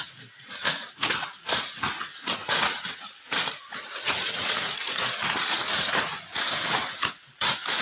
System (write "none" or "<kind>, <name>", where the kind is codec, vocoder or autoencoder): vocoder, Vocos